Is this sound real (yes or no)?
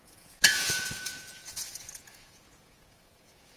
no